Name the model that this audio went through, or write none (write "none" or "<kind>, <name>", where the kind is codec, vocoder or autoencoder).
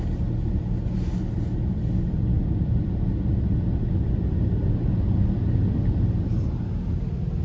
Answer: none